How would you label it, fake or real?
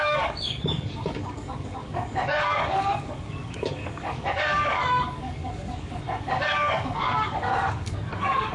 fake